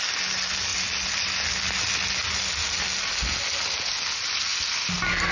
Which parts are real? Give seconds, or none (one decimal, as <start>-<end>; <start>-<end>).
0.0-5.3